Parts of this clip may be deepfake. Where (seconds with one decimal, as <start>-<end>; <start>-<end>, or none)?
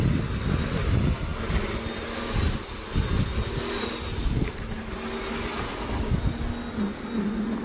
none